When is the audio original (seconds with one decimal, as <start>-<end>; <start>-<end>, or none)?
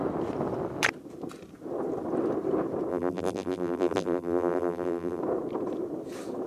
0.0-2.9; 5.2-6.5